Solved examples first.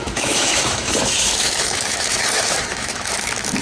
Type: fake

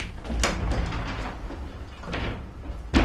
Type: real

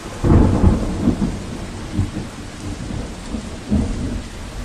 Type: real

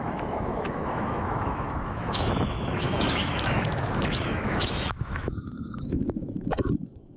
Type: fake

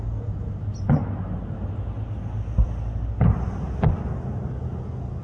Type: real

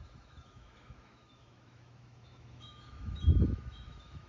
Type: fake